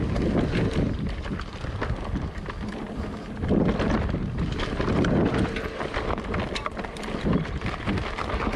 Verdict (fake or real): real